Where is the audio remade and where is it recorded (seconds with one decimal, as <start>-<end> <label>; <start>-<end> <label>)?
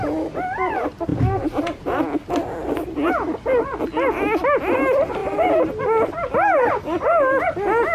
0.0-7.9 recorded